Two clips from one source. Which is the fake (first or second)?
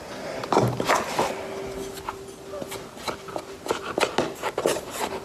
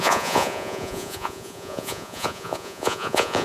second